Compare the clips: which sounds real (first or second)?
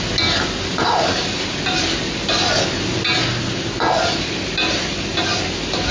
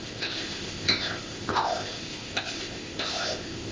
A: first